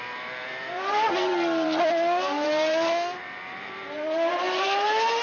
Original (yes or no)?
no